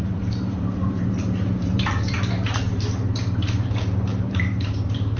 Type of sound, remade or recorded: remade